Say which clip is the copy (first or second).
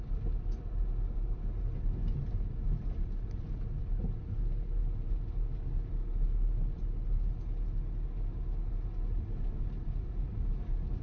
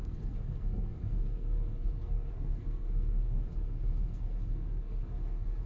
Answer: second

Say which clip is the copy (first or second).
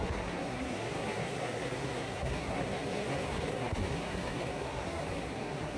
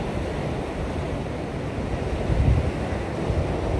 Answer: first